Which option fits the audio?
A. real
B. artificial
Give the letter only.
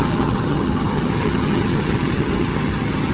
B